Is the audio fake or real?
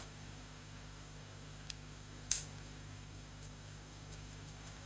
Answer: fake